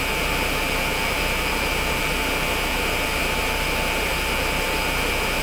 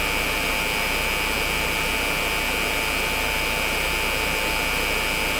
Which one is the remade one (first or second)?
first